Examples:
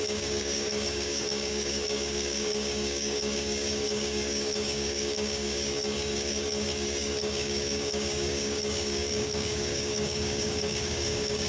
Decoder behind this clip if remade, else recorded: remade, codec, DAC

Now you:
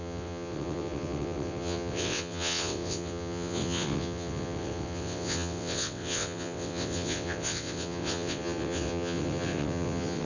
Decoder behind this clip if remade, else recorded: remade, vocoder, WaveNeXt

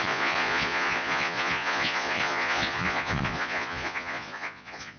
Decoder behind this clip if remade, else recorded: remade, vocoder, Vocos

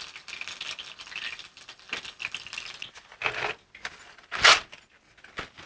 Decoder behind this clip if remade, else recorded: recorded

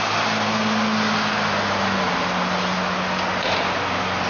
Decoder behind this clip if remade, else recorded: recorded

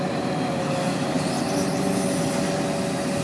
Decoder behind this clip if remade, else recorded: recorded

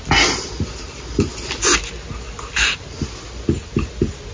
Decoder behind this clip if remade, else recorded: recorded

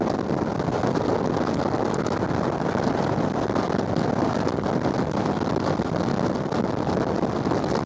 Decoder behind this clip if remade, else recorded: recorded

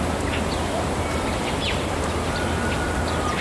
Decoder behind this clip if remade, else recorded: recorded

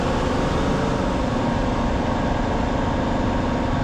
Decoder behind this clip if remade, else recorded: recorded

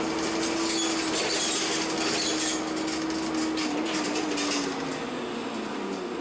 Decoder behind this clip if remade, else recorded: recorded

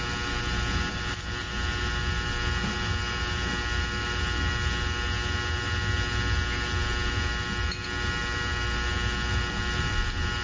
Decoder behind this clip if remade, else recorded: recorded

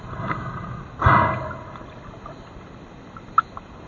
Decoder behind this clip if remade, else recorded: recorded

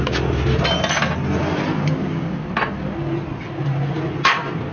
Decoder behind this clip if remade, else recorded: recorded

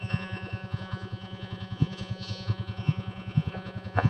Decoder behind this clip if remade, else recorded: remade, vocoder, Vocos